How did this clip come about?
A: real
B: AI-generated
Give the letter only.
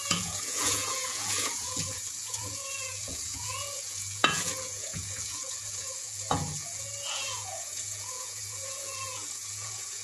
B